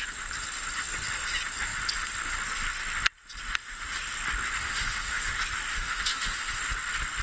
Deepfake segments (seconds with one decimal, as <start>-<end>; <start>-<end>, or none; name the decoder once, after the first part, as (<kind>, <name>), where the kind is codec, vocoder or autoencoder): 4.6-5.3 (autoencoder, DAC-VAE); 5.7-6.6